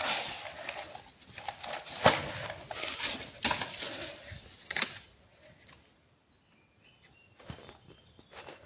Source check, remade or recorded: recorded